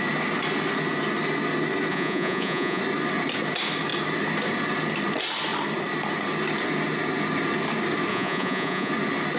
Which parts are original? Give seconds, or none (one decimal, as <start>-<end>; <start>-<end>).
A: 0.0-1.9; 2.8-8.1; 8.9-9.4